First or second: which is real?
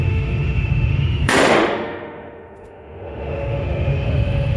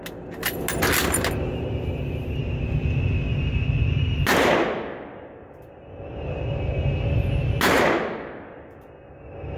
second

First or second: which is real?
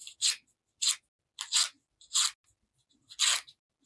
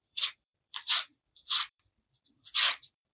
first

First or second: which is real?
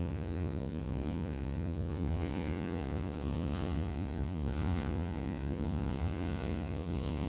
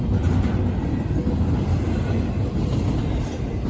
second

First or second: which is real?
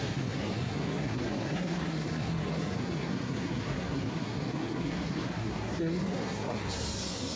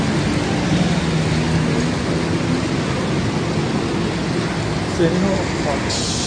second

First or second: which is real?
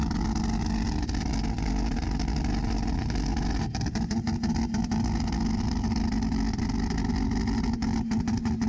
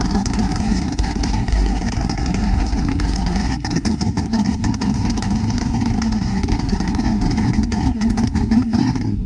first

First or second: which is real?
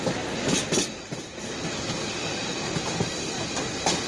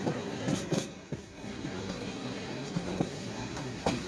first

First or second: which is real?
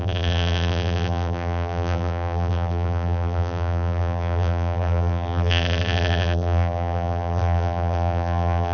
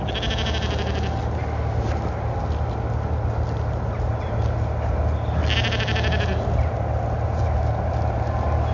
second